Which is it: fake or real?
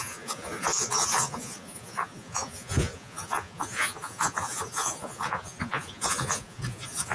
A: fake